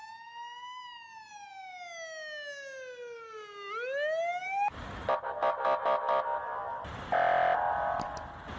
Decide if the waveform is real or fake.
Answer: real